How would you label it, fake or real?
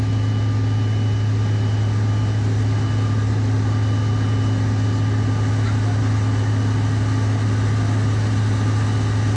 real